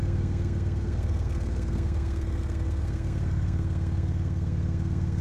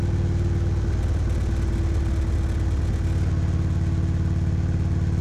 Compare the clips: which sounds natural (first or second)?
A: second